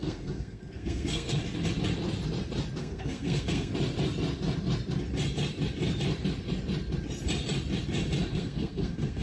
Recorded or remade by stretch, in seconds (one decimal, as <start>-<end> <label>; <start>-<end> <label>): 0.0-1.4 remade; 1.4-2.8 recorded; 2.8-3.7 remade; 3.7-8.3 recorded; 8.3-9.2 remade